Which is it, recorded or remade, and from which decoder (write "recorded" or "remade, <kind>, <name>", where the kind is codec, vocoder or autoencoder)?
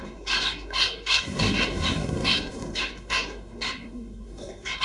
remade, codec, SNAC